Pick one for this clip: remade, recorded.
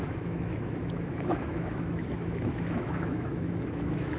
remade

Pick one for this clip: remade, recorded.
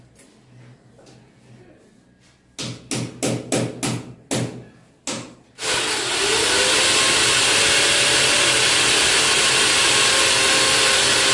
recorded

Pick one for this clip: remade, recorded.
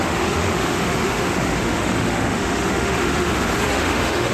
remade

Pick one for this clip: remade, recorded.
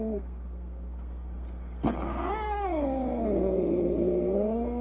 remade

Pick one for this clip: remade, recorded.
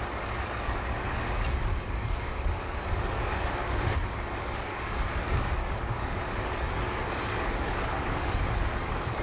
remade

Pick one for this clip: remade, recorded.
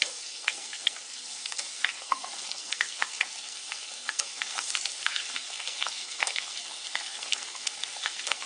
remade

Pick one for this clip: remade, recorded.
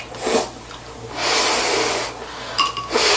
recorded